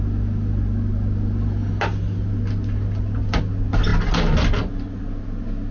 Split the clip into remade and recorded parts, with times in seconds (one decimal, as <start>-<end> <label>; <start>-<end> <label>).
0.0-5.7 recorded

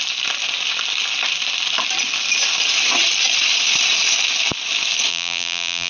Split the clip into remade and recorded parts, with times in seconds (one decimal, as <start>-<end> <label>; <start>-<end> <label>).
0.0-5.1 recorded; 5.1-5.9 remade

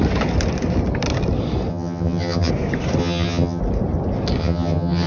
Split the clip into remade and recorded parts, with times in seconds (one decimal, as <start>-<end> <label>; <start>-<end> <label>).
0.0-1.7 recorded; 1.7-2.5 remade; 2.5-3.0 recorded; 3.0-3.6 remade; 3.6-4.4 recorded; 4.4-5.1 remade

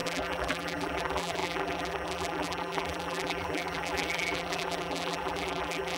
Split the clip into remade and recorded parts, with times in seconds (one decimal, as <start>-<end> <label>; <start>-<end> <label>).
0.0-6.0 remade

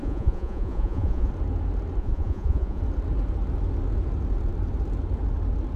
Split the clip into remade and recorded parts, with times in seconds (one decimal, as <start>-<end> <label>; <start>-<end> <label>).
0.0-1.3 remade; 1.3-2.0 recorded; 2.0-2.8 remade; 2.8-5.8 recorded

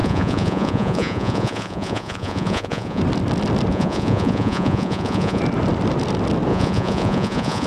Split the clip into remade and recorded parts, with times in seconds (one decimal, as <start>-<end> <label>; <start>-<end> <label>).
0.0-3.0 remade; 3.0-3.7 recorded; 3.7-5.4 remade; 5.4-6.5 recorded; 6.5-7.7 remade